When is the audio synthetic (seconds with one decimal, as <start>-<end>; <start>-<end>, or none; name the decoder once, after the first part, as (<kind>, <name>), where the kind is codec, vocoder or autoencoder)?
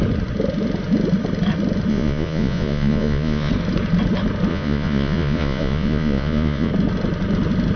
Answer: 1.9-3.5 (vocoder, Vocos); 4.5-6.7